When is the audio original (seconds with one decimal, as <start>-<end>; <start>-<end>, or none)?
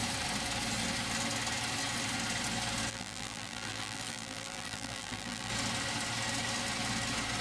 0.0-2.9; 5.5-7.4